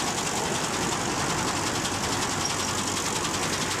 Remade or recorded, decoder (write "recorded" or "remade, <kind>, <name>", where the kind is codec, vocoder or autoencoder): recorded